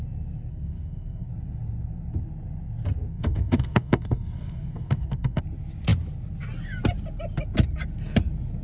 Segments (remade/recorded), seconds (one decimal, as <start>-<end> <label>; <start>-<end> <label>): 0.0-0.5 recorded; 0.5-1.3 remade; 1.3-3.1 recorded; 3.1-5.4 remade; 5.4-8.6 recorded